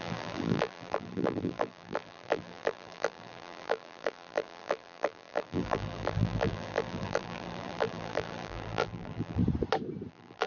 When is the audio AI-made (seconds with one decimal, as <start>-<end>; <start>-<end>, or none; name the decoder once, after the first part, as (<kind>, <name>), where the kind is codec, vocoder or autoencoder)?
0.0-9.4 (vocoder, BigVGAN v2); 10.1-10.5